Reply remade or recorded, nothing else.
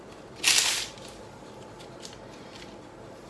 recorded